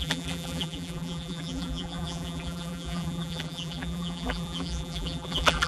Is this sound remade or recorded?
remade